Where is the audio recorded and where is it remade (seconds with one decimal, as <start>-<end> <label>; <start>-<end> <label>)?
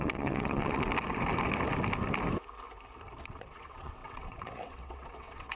0.0-0.9 remade; 0.9-3.2 recorded; 3.2-5.6 remade